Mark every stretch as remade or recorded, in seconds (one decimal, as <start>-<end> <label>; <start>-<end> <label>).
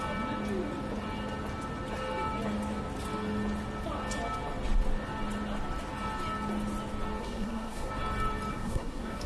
0.0-7.2 recorded; 7.2-7.9 remade; 7.9-8.5 recorded; 8.5-9.3 remade